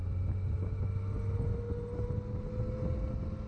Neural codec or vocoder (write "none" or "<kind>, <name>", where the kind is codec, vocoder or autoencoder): none